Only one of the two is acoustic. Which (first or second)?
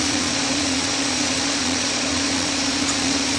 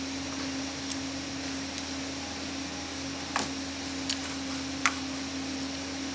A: second